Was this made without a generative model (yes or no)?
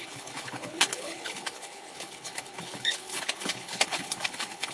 no